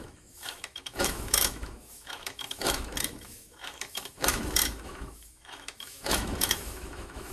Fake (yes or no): yes